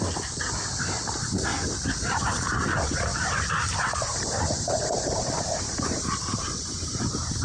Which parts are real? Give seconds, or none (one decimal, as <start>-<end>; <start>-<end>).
1.5-2.1